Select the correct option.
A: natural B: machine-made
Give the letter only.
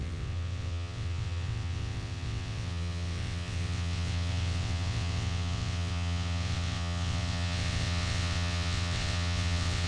B